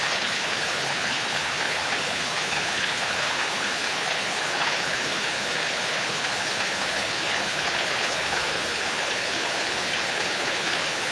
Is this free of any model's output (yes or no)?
no